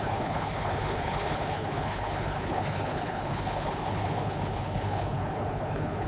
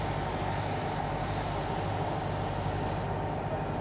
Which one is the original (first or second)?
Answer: second